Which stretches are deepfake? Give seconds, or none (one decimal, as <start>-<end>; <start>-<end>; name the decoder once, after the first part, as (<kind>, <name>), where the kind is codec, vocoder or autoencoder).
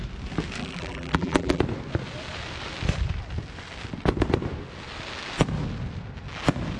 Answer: 0.6-1.6 (vocoder, BigVGAN v2)